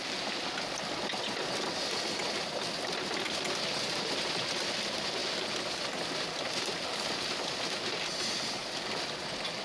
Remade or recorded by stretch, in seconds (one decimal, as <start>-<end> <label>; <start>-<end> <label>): 0.0-8.6 recorded; 8.6-9.2 remade; 9.2-9.6 recorded